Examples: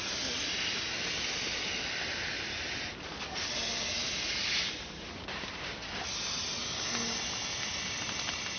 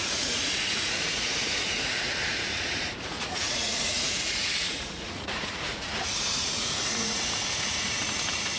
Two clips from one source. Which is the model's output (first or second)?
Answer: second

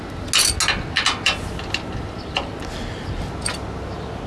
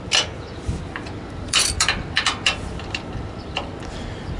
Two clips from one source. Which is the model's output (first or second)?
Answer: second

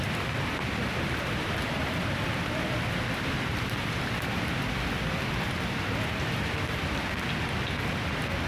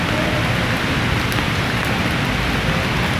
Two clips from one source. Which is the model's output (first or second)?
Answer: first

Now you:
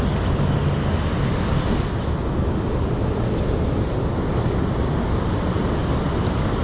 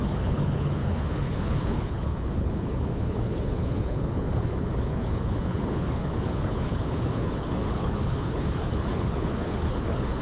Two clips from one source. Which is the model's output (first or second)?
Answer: second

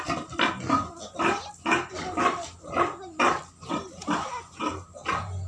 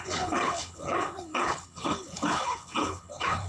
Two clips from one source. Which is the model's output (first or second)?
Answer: second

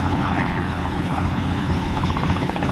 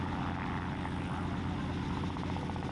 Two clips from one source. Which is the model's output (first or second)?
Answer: first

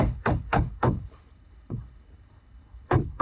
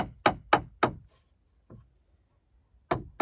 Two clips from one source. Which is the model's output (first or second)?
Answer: first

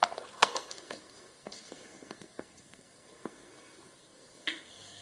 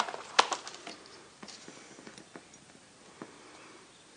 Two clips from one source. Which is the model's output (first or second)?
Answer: first